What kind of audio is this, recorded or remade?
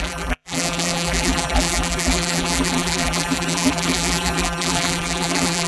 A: remade